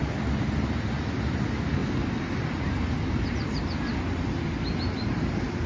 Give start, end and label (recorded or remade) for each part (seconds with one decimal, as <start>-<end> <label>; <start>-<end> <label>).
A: 0.0-5.7 recorded